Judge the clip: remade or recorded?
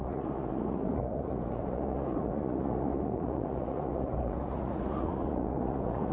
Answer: remade